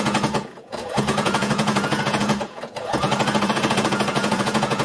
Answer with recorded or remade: remade